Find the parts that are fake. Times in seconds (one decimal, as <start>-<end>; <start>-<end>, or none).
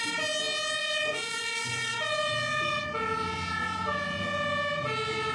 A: 0.8-2.8